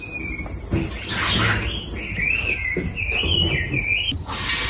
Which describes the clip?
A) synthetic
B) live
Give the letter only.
B